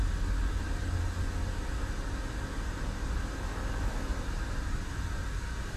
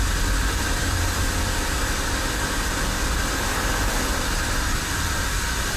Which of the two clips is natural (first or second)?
first